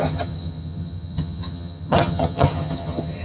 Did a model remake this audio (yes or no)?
yes